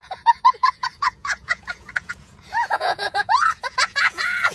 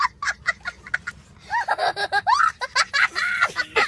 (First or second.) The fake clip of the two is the first